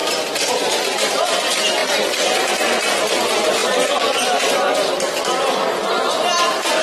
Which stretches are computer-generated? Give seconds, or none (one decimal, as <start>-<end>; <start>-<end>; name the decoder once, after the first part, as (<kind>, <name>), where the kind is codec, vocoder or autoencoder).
0.0-0.5 (vocoder, BigVGAN v2)

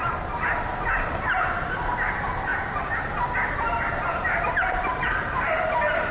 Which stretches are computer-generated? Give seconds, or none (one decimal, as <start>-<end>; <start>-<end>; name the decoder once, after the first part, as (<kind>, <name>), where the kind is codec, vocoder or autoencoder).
2.5-3.0 (vocoder, BigVGAN v2); 4.1-6.1

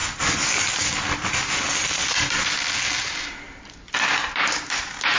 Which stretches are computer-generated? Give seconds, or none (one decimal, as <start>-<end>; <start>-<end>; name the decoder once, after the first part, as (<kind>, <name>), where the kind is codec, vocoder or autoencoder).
none